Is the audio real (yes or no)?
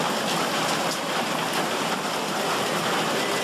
yes